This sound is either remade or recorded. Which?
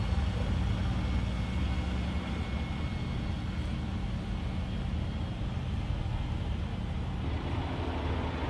recorded